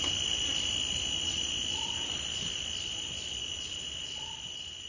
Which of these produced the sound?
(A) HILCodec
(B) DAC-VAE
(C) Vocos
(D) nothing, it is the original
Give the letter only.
D